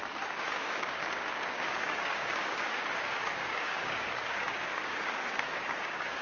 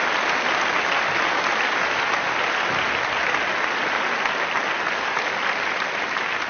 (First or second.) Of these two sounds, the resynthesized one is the first